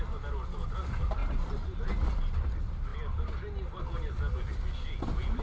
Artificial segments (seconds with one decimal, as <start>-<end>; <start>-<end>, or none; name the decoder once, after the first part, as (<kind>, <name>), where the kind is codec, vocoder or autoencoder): none